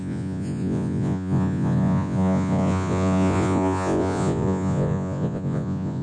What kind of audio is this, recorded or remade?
remade